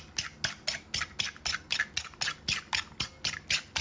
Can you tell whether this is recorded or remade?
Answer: recorded